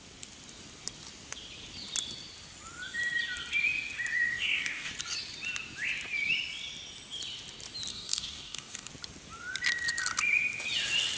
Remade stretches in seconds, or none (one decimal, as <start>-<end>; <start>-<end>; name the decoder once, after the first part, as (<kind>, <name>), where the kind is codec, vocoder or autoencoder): 4.3-4.9 (codec, DAC); 7.9-8.9